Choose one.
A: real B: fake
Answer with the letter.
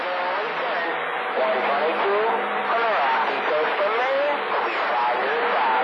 A